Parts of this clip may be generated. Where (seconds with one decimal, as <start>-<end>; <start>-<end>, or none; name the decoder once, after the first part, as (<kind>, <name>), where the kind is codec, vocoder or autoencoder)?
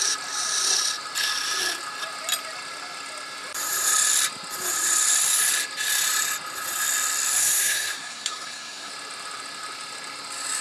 7.4-8.9 (codec, SNAC)